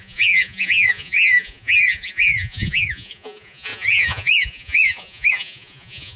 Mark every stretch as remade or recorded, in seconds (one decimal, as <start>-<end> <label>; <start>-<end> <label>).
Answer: 0.0-6.2 remade